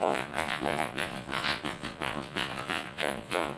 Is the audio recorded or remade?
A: remade